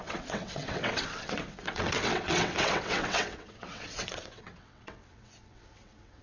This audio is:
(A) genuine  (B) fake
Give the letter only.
B